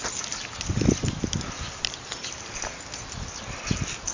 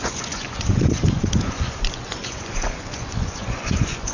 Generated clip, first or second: second